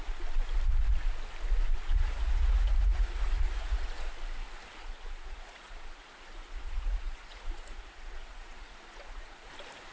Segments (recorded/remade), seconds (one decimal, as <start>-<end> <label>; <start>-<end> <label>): 0.0-1.9 recorded; 1.9-4.1 remade; 4.1-4.8 recorded; 4.8-9.5 remade; 9.5-9.9 recorded